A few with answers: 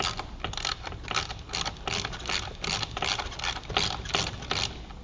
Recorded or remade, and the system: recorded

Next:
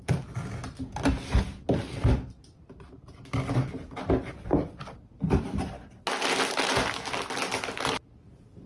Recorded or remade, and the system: recorded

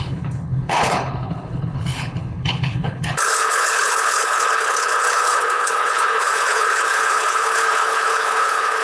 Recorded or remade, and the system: remade, codec, HILCodec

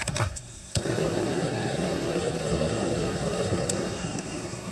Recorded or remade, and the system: remade, codec, SNAC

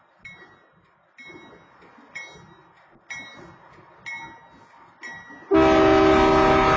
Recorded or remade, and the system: recorded